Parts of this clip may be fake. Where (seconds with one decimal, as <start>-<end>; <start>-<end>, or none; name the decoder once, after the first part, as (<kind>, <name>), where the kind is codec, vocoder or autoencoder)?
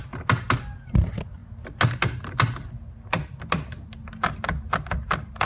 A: none